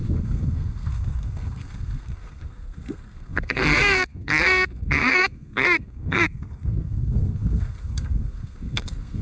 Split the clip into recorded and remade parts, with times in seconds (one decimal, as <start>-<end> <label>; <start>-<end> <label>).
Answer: 0.0-9.2 remade